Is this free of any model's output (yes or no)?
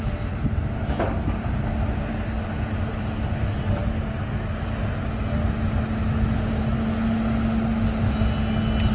yes